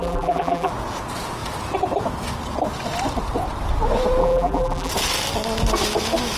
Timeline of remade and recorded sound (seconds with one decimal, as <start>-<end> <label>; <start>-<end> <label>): 0.0-0.7 remade; 0.7-4.2 recorded; 4.2-4.9 remade; 4.9-6.4 recorded